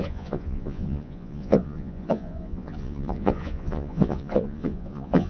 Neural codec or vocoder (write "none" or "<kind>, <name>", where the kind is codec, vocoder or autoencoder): vocoder, Vocos